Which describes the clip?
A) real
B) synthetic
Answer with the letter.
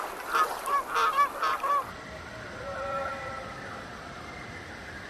B